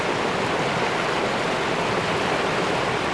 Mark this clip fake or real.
real